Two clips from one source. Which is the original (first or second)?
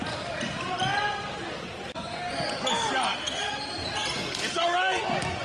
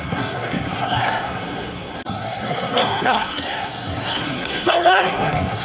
first